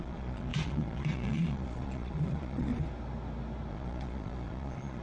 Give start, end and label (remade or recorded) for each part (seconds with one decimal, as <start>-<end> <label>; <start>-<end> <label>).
0.0-2.7 remade; 2.7-3.7 recorded; 3.7-5.0 remade

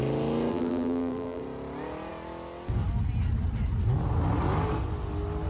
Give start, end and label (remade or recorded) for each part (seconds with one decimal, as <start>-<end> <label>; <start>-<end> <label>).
0.0-0.5 recorded; 0.5-1.4 remade; 1.4-5.5 recorded

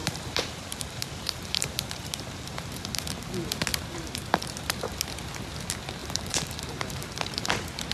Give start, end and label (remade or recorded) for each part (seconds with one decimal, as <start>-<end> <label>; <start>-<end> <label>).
0.0-3.3 remade; 3.3-6.0 recorded; 6.0-7.5 remade; 7.5-7.9 recorded